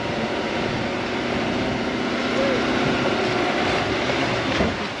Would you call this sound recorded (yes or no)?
no